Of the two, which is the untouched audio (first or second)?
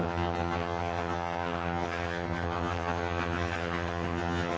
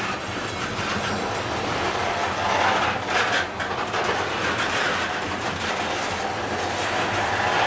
second